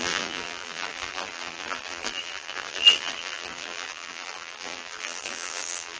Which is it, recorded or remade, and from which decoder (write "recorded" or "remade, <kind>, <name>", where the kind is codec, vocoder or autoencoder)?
remade, vocoder, BigVGAN v2